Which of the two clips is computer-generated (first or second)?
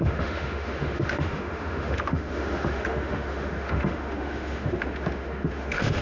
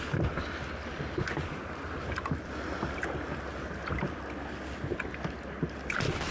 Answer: first